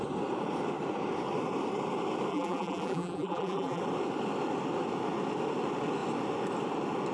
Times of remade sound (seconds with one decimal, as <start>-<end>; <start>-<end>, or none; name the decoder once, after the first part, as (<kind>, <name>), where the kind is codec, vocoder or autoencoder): 2.3-3.8 (vocoder, BigVGAN v2)